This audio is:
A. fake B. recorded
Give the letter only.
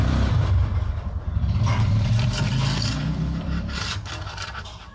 A